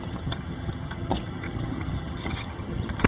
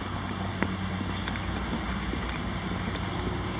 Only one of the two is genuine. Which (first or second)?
second